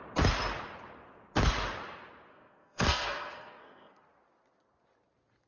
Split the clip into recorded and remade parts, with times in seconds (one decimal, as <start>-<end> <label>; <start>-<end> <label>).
0.0-2.3 recorded; 2.3-4.0 remade; 4.0-5.5 recorded

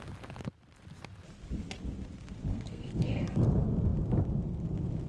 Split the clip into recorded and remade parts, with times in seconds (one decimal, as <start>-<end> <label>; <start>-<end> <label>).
0.0-2.5 recorded; 2.5-3.5 remade; 3.5-5.1 recorded

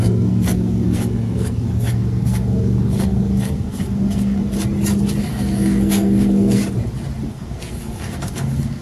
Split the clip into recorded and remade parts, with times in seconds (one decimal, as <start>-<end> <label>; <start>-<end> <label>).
0.0-4.4 remade; 4.4-5.2 recorded; 5.2-6.6 remade; 6.6-7.3 recorded; 7.3-8.8 remade

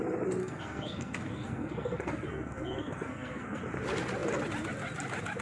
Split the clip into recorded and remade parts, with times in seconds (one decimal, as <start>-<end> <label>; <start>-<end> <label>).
0.0-0.4 recorded; 0.4-3.6 remade; 3.6-5.4 recorded